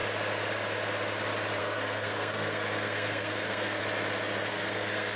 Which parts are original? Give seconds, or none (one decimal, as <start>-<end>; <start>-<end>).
0.0-1.6; 3.8-4.5

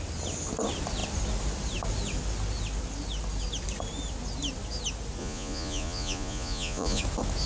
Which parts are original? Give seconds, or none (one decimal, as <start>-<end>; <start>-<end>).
0.0-5.2; 7.0-7.5

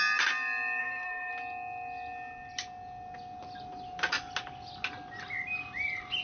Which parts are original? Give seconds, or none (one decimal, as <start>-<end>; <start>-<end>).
0.0-0.8; 1.3-6.2

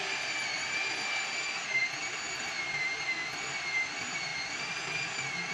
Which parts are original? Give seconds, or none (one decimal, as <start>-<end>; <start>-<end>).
0.0-5.5

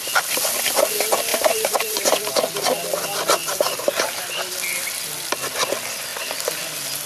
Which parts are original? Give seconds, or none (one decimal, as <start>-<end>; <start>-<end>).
0.0-1.3; 2.3-3.4; 4.2-7.1

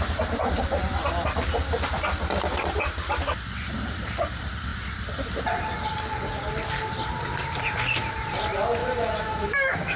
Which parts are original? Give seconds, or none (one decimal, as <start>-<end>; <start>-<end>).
0.0-8.8